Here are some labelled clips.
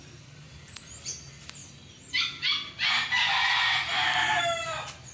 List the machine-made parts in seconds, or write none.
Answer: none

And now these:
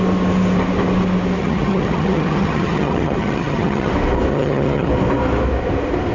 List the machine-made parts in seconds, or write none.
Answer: 1.4-3.9 (vocoder, HiFi-GAN); 4.3-4.9

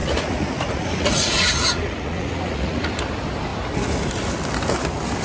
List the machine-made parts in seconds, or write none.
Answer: 0.0-3.1 (vocoder, Vocos)

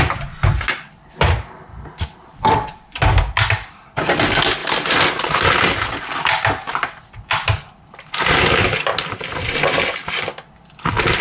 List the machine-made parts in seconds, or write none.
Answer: none

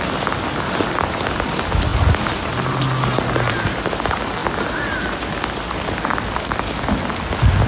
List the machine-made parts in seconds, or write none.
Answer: none